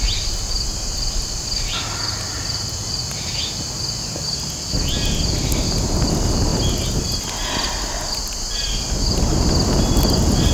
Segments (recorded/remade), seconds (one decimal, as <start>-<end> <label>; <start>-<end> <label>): 0.0-10.5 recorded